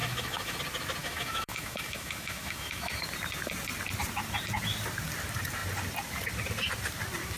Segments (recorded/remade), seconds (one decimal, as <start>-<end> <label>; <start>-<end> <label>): 0.0-0.6 remade; 0.6-1.0 recorded; 1.0-3.0 remade; 3.0-7.4 recorded